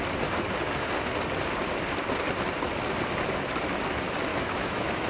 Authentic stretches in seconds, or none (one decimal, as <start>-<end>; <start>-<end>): 0.0-4.3